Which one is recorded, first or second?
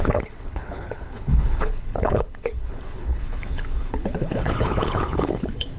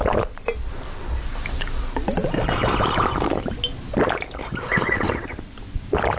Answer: second